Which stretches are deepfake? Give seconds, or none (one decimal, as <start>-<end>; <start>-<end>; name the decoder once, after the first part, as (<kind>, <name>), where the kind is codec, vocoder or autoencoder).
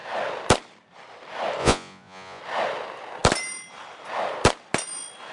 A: 1.6-2.4 (vocoder, Vocos)